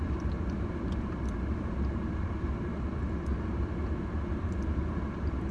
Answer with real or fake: real